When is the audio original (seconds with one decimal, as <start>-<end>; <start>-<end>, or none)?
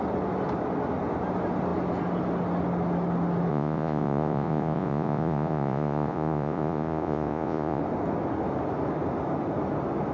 0.0-3.5; 7.8-10.1